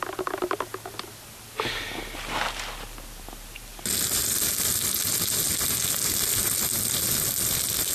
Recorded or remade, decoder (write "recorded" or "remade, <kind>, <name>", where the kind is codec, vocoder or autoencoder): recorded